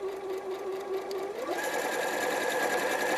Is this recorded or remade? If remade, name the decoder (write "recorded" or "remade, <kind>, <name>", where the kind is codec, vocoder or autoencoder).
remade, vocoder, BigVGAN v2